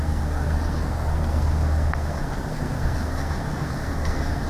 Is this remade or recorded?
remade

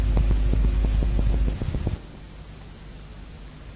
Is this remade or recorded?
recorded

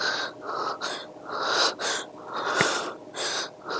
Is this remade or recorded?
recorded